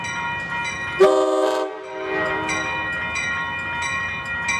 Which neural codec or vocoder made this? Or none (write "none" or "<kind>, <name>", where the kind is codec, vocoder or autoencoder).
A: none